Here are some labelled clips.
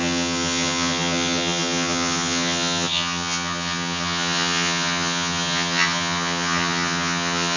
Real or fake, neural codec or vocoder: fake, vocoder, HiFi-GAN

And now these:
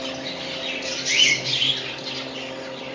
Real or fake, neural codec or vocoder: real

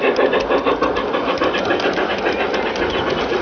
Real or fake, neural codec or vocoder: real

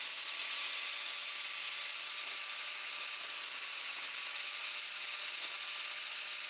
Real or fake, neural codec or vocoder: real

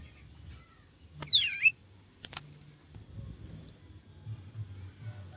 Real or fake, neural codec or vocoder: real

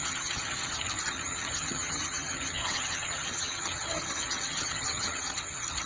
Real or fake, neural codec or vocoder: fake, vocoder, HiFi-GAN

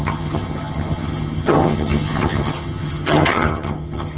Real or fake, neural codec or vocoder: fake, vocoder, HiFi-GAN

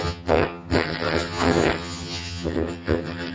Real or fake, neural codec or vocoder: fake, vocoder, HiFi-GAN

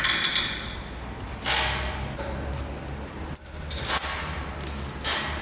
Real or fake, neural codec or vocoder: real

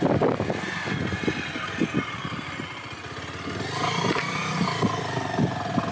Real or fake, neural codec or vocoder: real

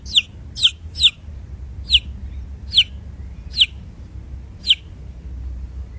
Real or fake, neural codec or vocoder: real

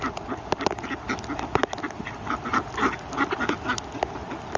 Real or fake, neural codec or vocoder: real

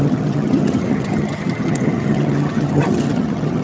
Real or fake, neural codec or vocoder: fake, vocoder, HiFi-GAN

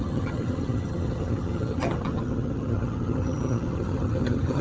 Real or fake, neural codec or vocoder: fake, vocoder, HiFi-GAN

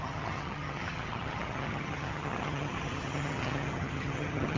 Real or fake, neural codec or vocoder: fake, vocoder, HiFi-GAN